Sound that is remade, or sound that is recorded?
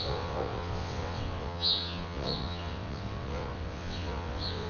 remade